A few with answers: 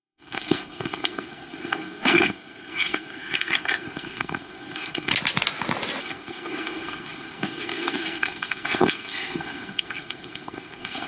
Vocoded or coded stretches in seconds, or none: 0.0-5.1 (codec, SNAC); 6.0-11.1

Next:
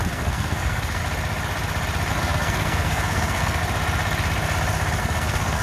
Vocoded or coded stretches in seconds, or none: 0.0-1.0 (codec, SNAC); 2.1-3.6; 5.0-5.6

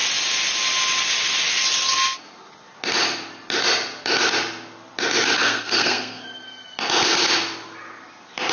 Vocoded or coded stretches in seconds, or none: 5.4-6.2 (codec, SNAC)